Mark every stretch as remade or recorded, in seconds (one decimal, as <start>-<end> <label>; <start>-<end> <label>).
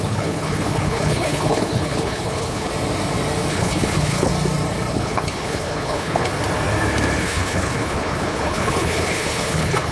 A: 0.0-2.7 remade; 2.7-3.5 recorded; 3.5-4.3 remade; 4.3-4.9 recorded; 4.9-6.3 remade; 6.3-7.2 recorded; 7.2-9.9 remade